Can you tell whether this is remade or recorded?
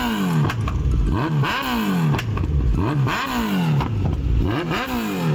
recorded